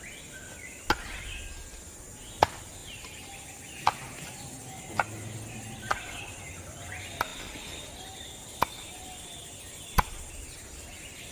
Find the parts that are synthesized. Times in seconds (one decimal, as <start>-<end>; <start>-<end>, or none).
none